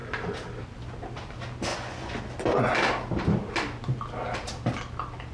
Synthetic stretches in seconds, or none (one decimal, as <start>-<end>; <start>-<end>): 1.7-2.2